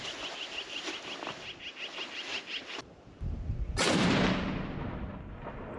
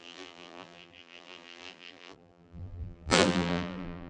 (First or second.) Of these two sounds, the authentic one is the first